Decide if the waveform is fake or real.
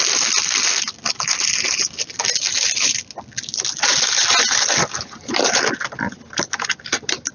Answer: real